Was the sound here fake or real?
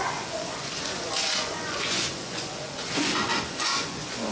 fake